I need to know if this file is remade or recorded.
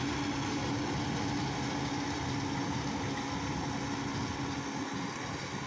recorded